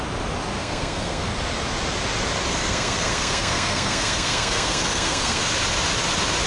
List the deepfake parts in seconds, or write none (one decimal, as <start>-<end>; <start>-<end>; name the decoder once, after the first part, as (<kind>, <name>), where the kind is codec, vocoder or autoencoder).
0.6-1.3 (codec, SNAC); 2.5-5.5